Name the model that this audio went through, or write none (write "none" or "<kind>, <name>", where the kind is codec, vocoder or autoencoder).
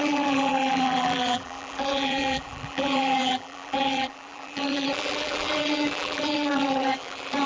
vocoder, BigVGAN v2